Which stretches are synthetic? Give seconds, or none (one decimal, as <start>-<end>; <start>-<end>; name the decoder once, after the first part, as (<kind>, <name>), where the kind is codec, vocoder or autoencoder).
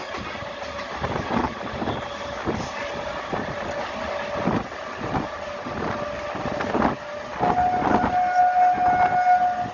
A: none